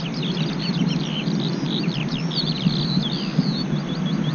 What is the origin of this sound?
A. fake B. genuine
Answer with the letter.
B